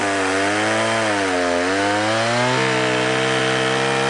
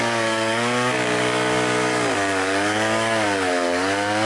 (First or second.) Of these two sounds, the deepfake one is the second